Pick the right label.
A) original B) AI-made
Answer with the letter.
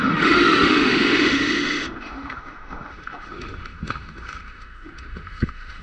B